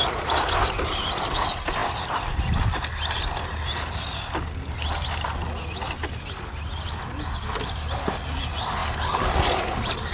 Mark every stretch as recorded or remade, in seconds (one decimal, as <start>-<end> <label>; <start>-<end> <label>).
0.0-10.1 recorded